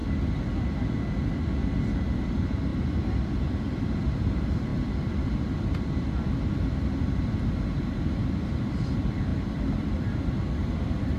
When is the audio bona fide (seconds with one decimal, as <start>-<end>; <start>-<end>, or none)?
0.0-2.0; 2.7-3.4